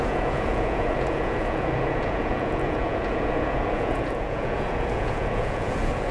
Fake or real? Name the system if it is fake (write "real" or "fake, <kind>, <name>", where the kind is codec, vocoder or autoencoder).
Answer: fake, vocoder, Vocos